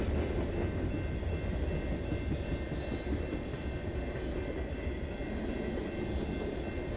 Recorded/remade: recorded